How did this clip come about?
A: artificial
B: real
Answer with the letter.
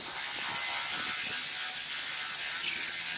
B